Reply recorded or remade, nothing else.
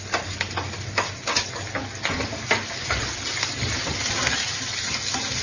recorded